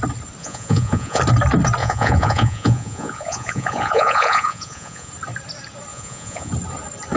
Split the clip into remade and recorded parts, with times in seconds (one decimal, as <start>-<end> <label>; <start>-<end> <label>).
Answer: 0.0-0.4 recorded; 0.4-1.2 remade; 1.2-1.8 recorded; 1.8-5.1 remade; 5.1-5.9 recorded; 5.9-6.5 remade; 6.5-7.2 recorded